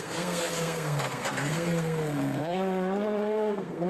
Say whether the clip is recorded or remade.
remade